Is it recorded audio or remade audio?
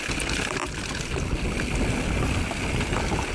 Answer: recorded